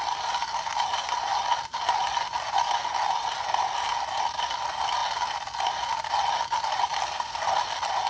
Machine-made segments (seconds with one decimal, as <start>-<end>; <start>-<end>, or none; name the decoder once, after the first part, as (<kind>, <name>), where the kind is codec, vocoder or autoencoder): 7.0-7.6 (codec, SNAC)

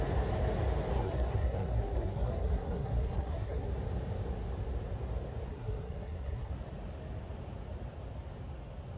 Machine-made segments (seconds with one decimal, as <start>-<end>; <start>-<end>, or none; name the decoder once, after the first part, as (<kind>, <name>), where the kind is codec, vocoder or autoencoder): 0.9-3.7 (codec, SNAC); 5.5-6.5

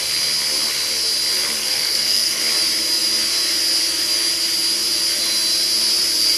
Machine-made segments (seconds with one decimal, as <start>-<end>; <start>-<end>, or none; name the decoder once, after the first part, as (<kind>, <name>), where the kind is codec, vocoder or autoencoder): 1.6-2.4 (codec, SNAC)

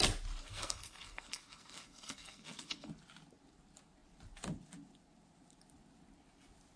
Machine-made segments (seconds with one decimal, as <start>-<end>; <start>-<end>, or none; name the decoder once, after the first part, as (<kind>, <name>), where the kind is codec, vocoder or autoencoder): 0.4-2.9 (codec, SNAC)

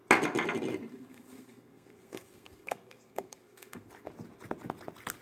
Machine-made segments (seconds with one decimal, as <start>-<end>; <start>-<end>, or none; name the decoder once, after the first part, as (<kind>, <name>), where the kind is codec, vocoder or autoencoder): 0.9-3.9 (codec, SNAC)